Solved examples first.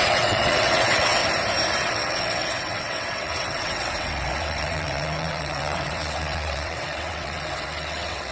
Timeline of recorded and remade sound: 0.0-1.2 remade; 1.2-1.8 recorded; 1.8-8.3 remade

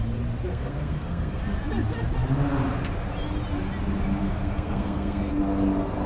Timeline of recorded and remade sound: 0.0-0.5 recorded; 0.5-1.4 remade; 1.4-4.2 recorded; 4.2-5.3 remade; 5.3-6.1 recorded

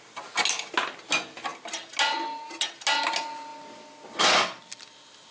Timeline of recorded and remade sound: 0.0-5.3 recorded

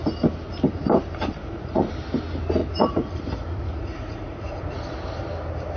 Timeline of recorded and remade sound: 0.0-1.4 recorded; 1.4-1.9 remade; 1.9-2.6 recorded; 2.6-4.8 remade; 4.8-5.8 recorded

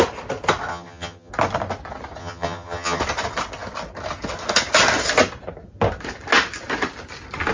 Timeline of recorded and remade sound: 0.0-0.7 recorded; 0.7-1.3 remade; 1.3-2.2 recorded; 2.2-3.0 remade; 3.0-7.5 recorded

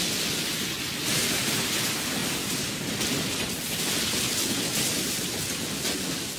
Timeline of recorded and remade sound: 0.0-6.4 recorded

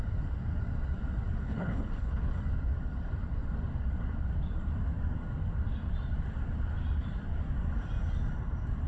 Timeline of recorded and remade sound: 0.0-1.4 recorded; 1.4-2.4 remade; 2.4-8.9 recorded